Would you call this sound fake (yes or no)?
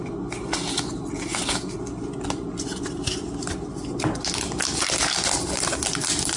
no